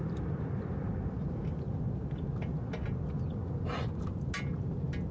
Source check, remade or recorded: recorded